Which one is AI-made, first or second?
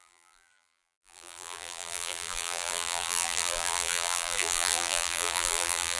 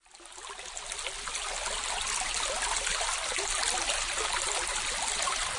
first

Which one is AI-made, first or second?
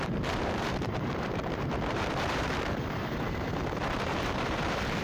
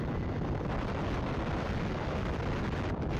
first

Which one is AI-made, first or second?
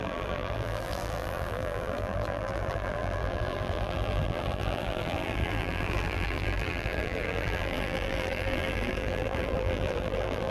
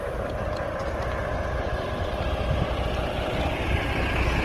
first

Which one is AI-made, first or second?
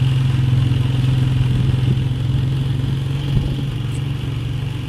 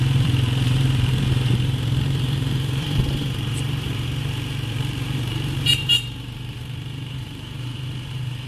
second